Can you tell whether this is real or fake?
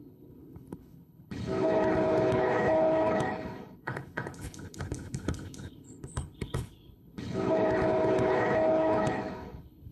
fake